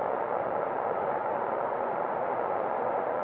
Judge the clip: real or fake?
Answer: fake